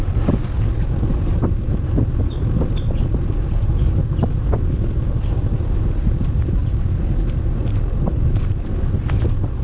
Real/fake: real